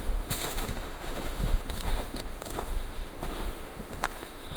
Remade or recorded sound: remade